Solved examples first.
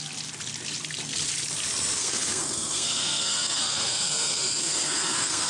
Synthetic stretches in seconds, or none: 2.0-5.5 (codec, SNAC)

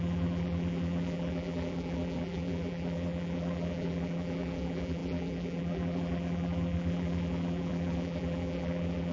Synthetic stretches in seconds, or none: 0.0-9.1 (vocoder, BigVGAN v2)

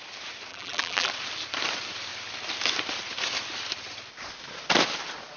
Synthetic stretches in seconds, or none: 0.5-1.1 (vocoder, BigVGAN v2)

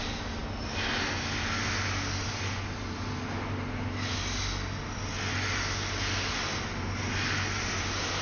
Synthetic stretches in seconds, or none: none

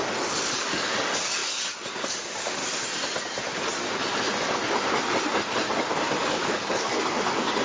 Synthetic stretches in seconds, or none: 0.0-2.6 (codec, DAC); 6.3-7.6